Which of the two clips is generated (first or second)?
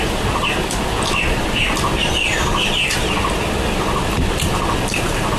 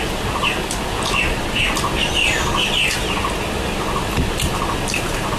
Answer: first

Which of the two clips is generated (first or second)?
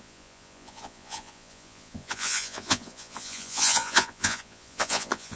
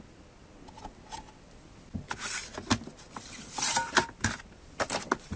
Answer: first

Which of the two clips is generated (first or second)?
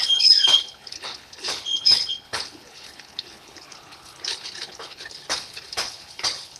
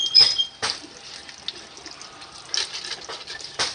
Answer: first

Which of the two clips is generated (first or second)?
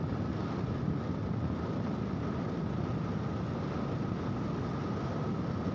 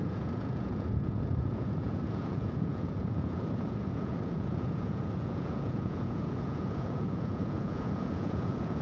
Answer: second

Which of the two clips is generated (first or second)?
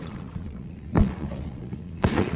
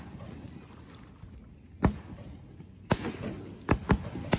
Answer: first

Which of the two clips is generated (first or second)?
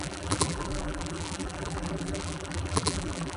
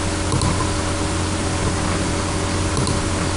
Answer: first